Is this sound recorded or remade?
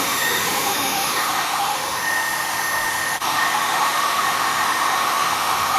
remade